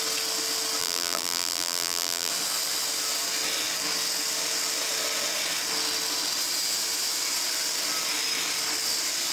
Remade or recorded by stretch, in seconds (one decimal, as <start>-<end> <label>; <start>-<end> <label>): 0.0-0.8 recorded; 0.8-2.3 remade; 2.3-9.3 recorded